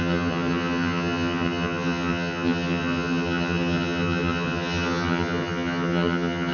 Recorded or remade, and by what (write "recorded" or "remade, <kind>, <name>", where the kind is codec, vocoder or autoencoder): remade, vocoder, HiFi-GAN